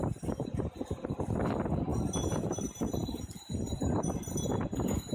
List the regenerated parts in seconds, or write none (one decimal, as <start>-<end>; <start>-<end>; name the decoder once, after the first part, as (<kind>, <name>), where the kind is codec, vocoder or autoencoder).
1.9-5.1 (vocoder, BigVGAN v2)